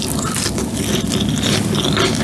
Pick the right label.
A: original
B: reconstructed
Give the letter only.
A